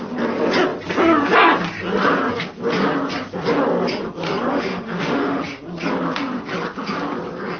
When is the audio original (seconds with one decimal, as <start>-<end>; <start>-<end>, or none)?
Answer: 0.0-4.5; 5.4-7.6